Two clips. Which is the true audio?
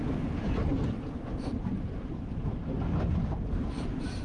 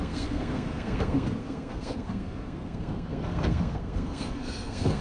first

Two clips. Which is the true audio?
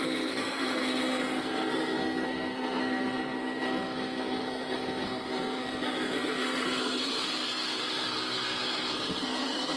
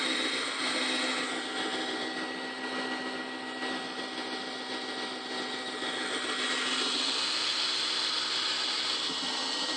second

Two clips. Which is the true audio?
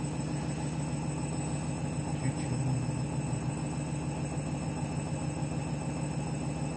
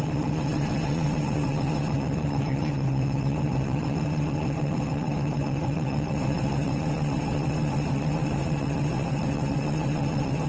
first